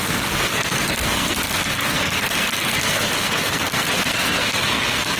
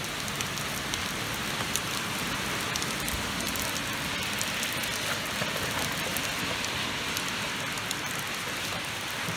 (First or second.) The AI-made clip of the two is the first